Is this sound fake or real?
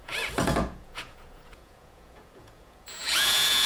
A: fake